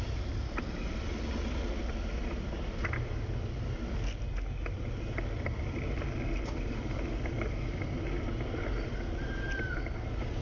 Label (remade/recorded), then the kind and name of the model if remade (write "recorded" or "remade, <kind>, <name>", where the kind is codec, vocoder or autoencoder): recorded